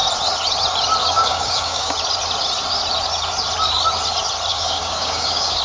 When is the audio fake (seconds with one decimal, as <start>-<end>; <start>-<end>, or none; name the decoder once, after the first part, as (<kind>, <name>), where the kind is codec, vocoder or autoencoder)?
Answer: 1.0-1.9 (codec, DAC); 4.5-5.6